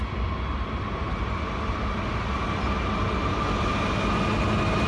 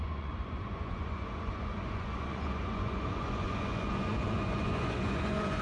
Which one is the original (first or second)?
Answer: first